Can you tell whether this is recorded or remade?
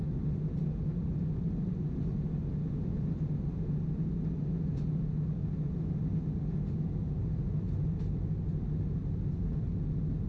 recorded